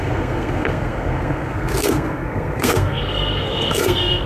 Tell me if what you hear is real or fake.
fake